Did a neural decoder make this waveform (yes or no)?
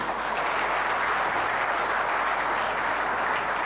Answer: no